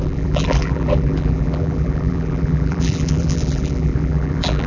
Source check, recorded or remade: remade